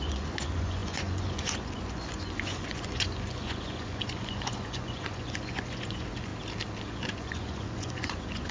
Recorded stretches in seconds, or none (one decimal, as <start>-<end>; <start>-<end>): 6.3-6.9